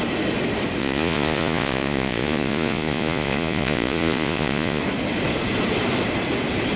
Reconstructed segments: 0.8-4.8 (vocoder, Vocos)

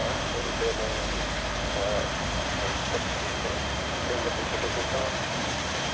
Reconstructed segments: 3.5-5.9 (vocoder, BigVGAN v2)

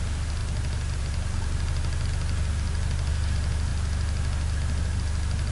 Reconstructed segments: none

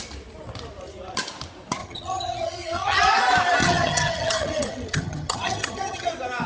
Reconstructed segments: 1.8-3.0 (vocoder, HiFi-GAN); 3.6-6.1

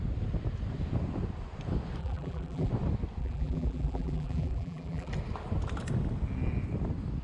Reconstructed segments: 2.0-2.7 (vocoder, BigVGAN v2); 3.2-5.1

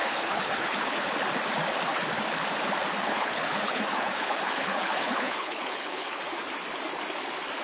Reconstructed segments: 0.0-1.1 (codec, HILCodec); 3.0-6.2